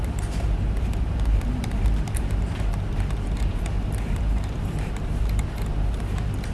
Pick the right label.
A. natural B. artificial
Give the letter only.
B